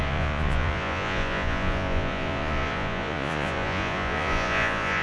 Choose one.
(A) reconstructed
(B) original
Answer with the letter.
A